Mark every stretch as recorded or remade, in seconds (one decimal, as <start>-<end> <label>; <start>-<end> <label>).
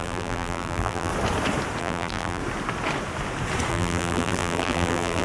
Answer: 0.0-1.1 remade; 1.1-1.8 recorded; 1.8-2.4 remade; 2.4-3.7 recorded; 3.7-5.2 remade